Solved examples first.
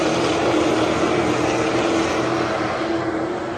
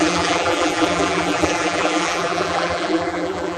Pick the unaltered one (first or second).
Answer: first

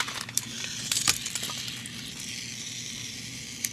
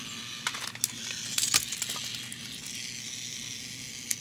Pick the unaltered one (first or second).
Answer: second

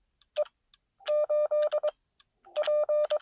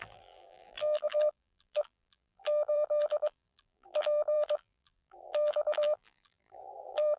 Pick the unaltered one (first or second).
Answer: first